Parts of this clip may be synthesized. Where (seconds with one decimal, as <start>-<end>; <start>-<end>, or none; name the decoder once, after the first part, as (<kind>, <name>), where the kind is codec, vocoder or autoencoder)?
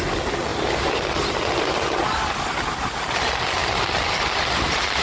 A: none